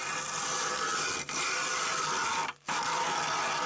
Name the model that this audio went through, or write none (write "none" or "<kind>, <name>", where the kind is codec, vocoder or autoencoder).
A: none